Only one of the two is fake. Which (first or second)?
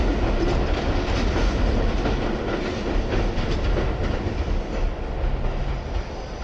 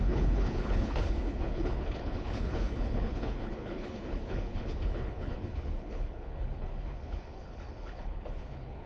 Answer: second